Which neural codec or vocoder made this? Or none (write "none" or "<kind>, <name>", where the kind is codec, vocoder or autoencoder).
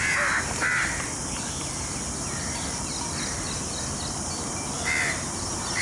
none